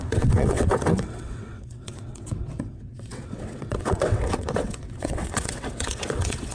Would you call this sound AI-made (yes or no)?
yes